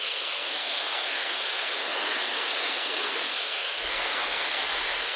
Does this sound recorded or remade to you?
remade